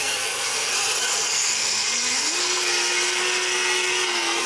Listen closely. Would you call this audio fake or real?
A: fake